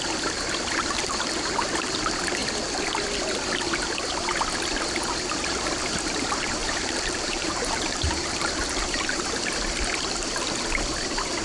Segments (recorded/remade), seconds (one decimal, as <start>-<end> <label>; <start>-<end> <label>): 0.0-6.6 recorded; 6.6-9.5 remade; 9.5-11.4 recorded